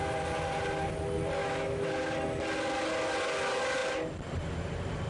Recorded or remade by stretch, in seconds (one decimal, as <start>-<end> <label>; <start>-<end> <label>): 0.0-1.4 recorded; 1.4-1.9 remade; 1.9-5.1 recorded